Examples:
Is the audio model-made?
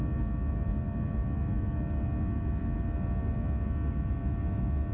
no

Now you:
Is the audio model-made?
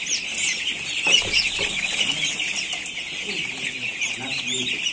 no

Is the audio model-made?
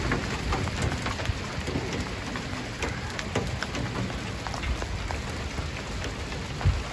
no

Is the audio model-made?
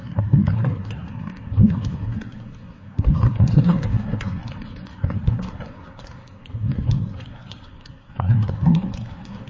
yes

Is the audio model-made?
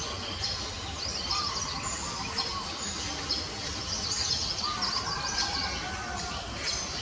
no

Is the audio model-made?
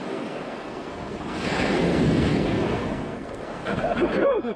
yes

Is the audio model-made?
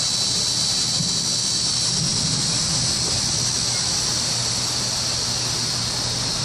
no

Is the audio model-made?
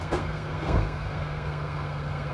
yes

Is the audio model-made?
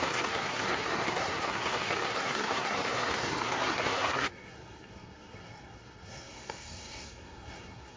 yes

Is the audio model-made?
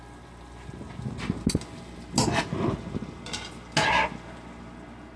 no